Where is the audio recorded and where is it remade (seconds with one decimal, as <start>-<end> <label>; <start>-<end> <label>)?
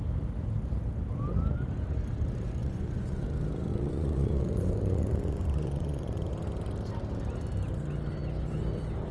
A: 0.0-2.6 recorded; 2.6-3.2 remade; 3.2-3.7 recorded; 3.7-6.3 remade; 6.3-9.1 recorded